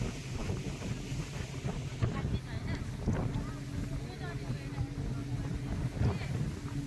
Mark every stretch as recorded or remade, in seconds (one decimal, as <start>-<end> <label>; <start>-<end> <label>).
0.0-6.9 recorded